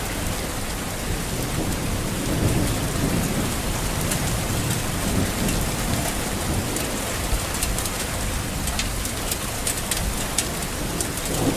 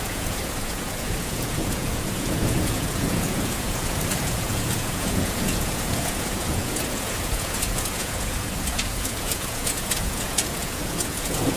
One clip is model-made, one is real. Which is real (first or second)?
first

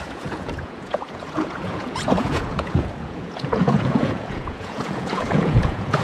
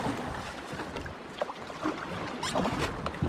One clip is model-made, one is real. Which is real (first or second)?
second